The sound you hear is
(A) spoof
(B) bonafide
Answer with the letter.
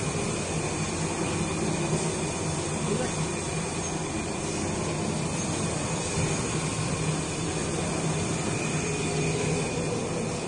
B